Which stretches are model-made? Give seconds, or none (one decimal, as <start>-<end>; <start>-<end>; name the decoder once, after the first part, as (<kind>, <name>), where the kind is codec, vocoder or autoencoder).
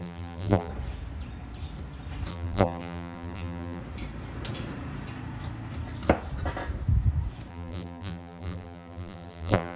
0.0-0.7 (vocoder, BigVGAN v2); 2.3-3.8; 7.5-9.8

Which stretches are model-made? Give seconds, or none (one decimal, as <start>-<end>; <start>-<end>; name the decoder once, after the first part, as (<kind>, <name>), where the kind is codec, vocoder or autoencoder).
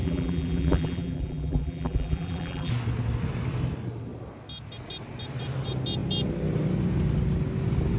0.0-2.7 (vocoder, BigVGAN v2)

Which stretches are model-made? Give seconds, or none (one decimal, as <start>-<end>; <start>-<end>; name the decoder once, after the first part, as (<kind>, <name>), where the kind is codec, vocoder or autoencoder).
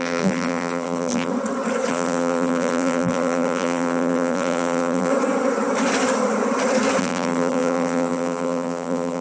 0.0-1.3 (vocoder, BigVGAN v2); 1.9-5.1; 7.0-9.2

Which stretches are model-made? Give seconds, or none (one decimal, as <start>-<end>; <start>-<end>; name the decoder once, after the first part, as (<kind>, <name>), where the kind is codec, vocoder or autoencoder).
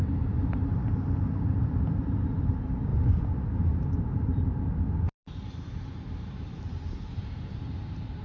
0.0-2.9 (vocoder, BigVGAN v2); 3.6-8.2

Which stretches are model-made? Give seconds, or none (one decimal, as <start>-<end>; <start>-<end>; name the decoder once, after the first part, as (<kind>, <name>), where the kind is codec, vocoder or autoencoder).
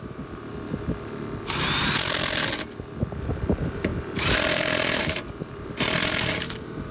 0.0-0.5 (vocoder, BigVGAN v2); 3.2-6.9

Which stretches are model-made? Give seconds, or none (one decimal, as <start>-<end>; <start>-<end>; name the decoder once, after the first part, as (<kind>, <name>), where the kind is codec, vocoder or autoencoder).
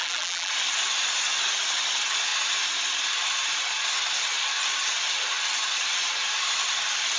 0.0-0.5 (vocoder, BigVGAN v2)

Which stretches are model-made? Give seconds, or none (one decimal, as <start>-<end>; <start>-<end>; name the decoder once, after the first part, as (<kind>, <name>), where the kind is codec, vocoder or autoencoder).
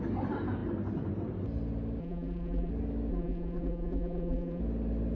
2.0-2.7 (vocoder, BigVGAN v2); 3.1-4.6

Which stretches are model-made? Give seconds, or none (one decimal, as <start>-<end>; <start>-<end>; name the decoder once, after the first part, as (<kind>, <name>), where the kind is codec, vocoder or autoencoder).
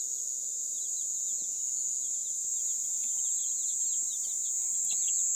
0.5-1.1 (vocoder, BigVGAN v2); 2.2-2.9